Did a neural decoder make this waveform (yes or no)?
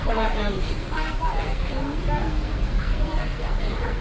yes